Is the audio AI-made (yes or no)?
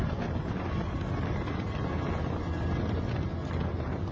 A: no